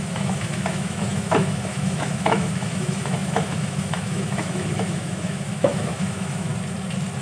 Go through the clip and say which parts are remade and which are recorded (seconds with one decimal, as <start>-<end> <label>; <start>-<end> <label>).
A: 0.0-6.5 remade; 6.5-7.2 recorded